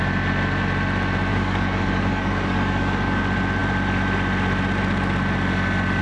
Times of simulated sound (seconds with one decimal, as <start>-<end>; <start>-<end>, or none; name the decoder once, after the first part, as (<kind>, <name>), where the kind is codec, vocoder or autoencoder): 1.3-3.2 (codec, DAC)